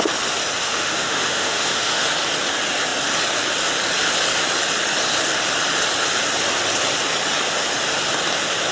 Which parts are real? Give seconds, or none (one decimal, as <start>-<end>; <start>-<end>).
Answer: 0.0-0.6; 2.1-8.7